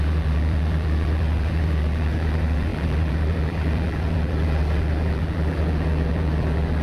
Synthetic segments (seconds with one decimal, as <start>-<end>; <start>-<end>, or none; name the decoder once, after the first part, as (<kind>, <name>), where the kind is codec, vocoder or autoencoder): 0.0-6.8 (vocoder, BigVGAN v2)